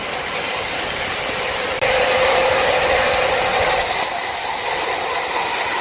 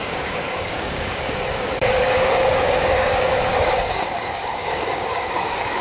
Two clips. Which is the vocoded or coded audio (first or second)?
second